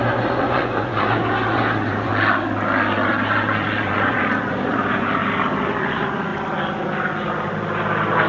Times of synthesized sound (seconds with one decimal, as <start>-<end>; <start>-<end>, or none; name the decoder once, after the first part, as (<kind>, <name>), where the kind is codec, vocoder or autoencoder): 0.0-2.1 (vocoder, Vocos); 3.1-5.2; 5.8-6.3